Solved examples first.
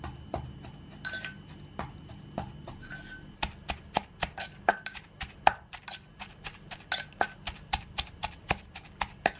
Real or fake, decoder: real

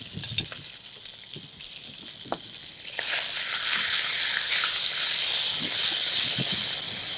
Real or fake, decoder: real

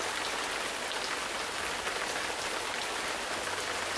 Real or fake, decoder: real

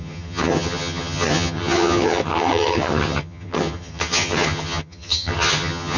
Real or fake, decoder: fake, vocoder, HiFi-GAN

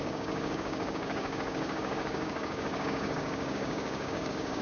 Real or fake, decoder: fake, codec, DAC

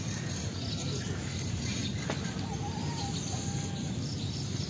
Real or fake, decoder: real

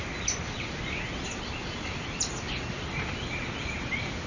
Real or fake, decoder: real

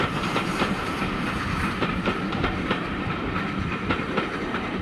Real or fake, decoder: fake, vocoder, BigVGAN v2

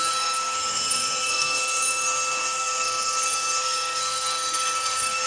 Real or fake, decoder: fake, codec, SNAC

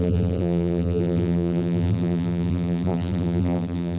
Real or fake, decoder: fake, vocoder, BigVGAN v2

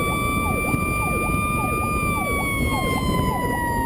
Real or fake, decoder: real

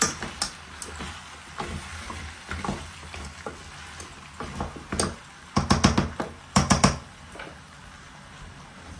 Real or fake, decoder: real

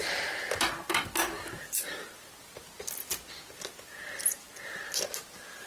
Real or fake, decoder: real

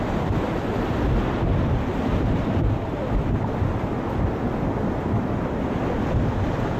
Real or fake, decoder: real